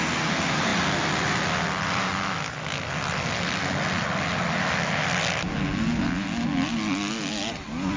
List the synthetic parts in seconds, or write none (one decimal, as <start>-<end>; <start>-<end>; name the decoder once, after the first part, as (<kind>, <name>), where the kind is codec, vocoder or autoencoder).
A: none